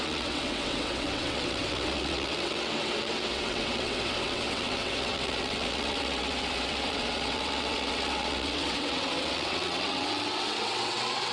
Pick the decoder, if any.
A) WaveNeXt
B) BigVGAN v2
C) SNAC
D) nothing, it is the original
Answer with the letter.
A